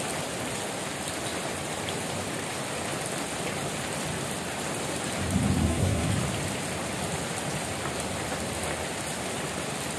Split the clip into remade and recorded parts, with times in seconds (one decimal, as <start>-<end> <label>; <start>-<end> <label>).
0.0-5.6 recorded; 5.6-6.1 remade; 6.1-10.0 recorded